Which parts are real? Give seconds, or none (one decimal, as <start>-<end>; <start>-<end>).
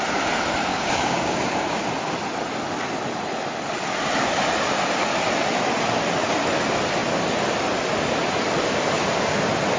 0.0-0.7; 1.9-9.8